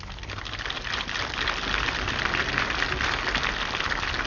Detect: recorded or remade recorded